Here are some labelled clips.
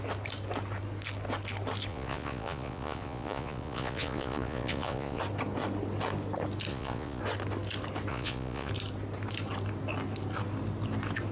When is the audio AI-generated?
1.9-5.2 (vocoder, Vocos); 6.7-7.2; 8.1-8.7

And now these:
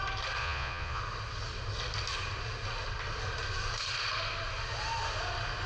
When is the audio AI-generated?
0.4-1.0 (vocoder, Vocos)

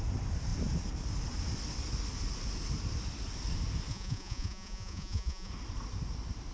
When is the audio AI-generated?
3.9-5.5 (vocoder, Vocos)

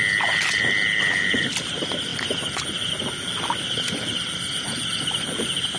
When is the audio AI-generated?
none

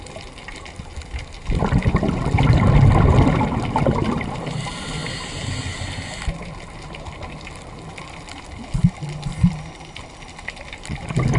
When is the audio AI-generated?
none

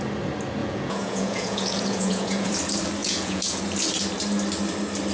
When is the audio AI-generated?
0.6-2.5 (vocoder, Vocos); 3.0-3.6

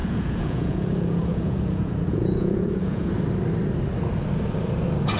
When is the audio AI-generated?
0.0-3.1 (vocoder, Vocos)

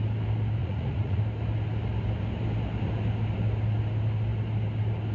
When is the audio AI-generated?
0.6-1.2 (vocoder, Vocos)